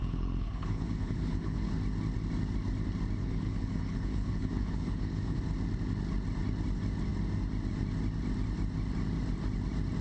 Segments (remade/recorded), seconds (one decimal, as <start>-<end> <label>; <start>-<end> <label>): 0.0-1.7 remade; 1.7-3.2 recorded; 3.2-5.4 remade; 5.4-10.0 recorded